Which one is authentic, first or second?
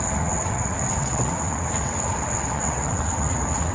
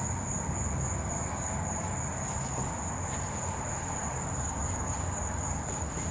second